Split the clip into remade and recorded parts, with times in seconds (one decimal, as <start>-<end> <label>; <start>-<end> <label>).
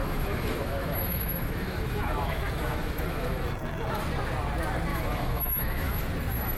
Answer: 0.0-4.0 remade; 4.0-4.9 recorded; 4.9-6.0 remade; 6.0-6.6 recorded